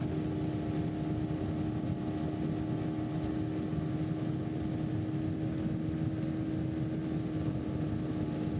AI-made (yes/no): no